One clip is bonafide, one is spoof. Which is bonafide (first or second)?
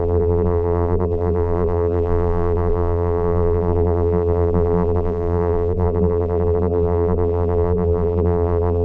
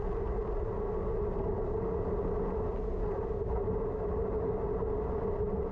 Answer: second